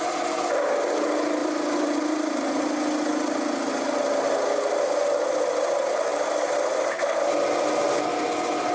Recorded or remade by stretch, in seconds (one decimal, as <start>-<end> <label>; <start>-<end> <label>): 0.0-1.4 recorded; 1.4-2.4 remade; 2.4-6.1 recorded; 6.1-7.3 remade; 7.3-8.7 recorded